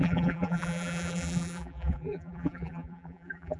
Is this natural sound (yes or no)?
no